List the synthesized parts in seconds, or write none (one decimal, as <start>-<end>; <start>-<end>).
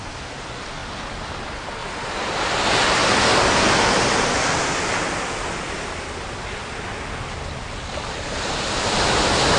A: 1.8-2.4; 3.3-4.6